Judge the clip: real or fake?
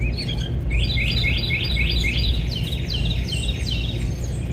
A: real